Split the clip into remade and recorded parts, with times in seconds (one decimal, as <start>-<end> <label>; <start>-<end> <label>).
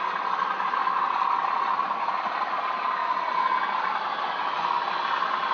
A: 0.0-5.5 recorded